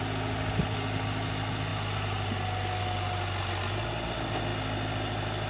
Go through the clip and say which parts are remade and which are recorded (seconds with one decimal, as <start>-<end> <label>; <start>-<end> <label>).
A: 0.0-5.5 recorded

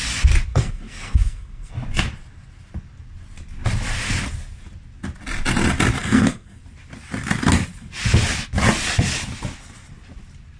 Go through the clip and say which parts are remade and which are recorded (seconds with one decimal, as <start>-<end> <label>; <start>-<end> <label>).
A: 0.0-0.5 recorded; 0.5-1.7 remade; 1.7-6.0 recorded; 6.0-6.6 remade; 6.6-10.6 recorded